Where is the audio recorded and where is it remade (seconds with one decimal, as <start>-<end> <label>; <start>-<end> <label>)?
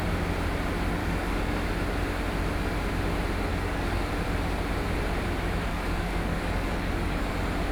0.0-1.0 recorded; 1.0-1.7 remade; 1.7-3.5 recorded; 3.5-4.1 remade; 4.1-5.7 recorded; 5.7-7.3 remade; 7.3-7.7 recorded